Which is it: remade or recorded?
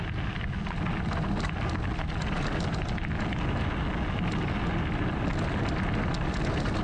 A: recorded